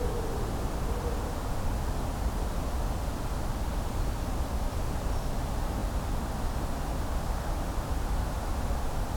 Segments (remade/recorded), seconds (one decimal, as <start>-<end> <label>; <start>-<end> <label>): 0.0-9.2 recorded